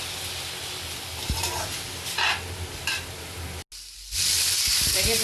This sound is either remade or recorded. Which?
recorded